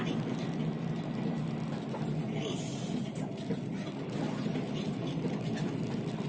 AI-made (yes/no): no